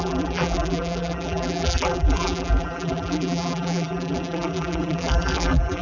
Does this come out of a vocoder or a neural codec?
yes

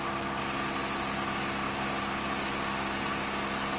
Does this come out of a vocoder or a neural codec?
no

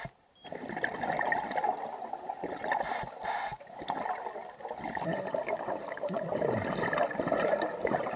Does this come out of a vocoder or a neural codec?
no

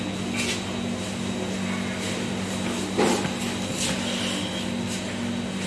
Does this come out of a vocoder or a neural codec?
no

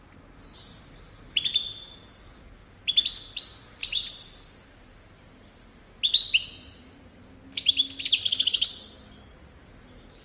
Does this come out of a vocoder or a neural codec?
no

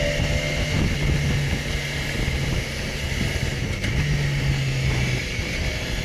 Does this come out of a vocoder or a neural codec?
no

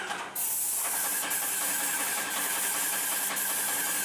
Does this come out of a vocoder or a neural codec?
no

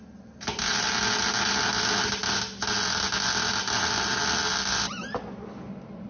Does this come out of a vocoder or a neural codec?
no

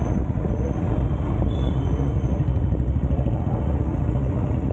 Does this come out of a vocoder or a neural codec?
yes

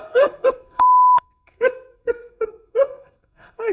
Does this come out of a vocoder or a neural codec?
yes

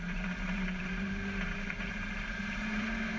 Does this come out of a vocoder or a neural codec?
yes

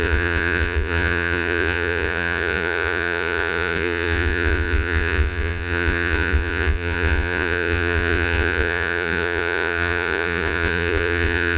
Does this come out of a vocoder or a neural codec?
yes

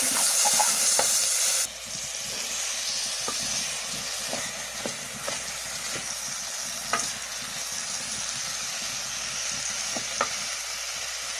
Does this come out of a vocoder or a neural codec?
no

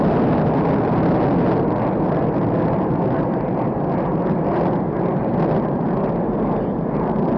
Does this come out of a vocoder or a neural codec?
no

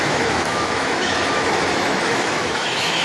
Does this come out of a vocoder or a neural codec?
yes